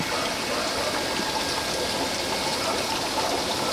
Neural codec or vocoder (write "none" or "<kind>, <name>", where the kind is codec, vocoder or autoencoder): vocoder, BigVGAN v2